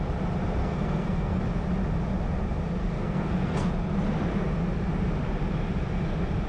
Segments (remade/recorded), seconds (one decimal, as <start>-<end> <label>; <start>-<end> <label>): 0.0-0.6 recorded; 0.6-1.4 remade; 1.4-2.8 recorded; 2.8-3.7 remade; 3.7-6.5 recorded